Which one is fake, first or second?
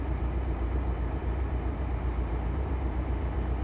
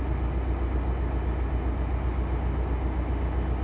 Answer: first